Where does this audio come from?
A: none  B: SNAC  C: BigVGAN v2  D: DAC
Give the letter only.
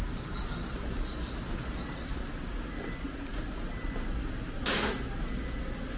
A